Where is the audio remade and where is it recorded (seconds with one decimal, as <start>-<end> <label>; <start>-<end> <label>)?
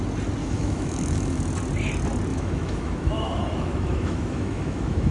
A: 0.0-0.4 recorded; 0.4-1.4 remade; 1.4-2.3 recorded; 2.3-5.1 remade